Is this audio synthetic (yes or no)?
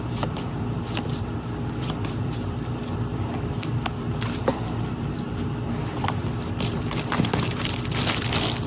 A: yes